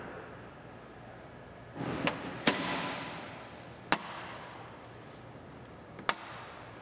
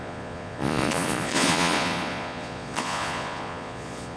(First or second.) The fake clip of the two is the second